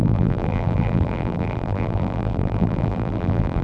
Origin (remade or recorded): remade